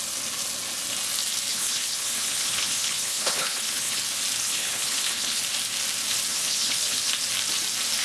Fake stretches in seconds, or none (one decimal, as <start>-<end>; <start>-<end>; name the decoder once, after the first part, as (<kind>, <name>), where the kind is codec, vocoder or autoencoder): 1.5-4.0 (codec, HILCodec); 4.4-5.4; 6.3-7.1